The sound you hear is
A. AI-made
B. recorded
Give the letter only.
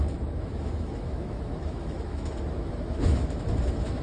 A